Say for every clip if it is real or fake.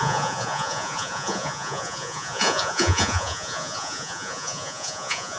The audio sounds fake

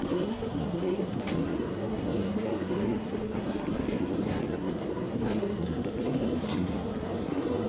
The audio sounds fake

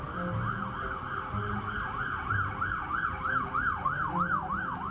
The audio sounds real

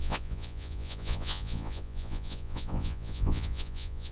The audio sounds fake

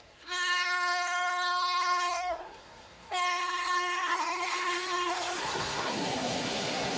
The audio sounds fake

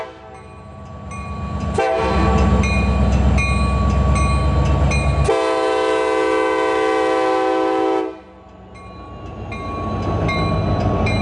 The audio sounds real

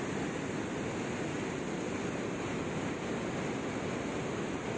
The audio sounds real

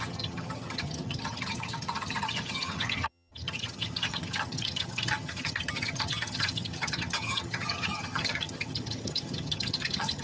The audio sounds fake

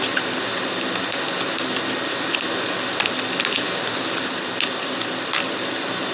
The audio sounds real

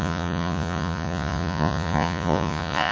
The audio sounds fake